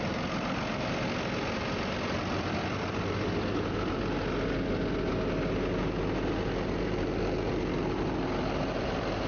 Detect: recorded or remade recorded